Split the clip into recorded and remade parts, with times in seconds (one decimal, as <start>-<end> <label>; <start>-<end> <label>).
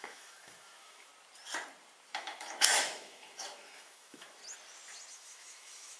0.0-1.1 remade; 1.1-2.2 recorded; 2.2-4.4 remade; 4.4-5.1 recorded; 5.1-6.0 remade